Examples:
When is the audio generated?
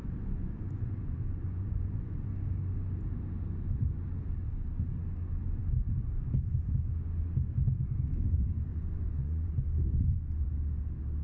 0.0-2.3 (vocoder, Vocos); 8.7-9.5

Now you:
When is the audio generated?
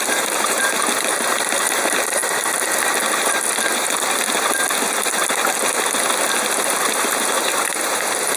0.0-2.2 (vocoder, BigVGAN v2); 6.6-8.4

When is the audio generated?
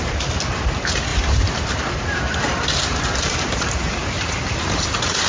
1.1-4.3 (vocoder, BigVGAN v2)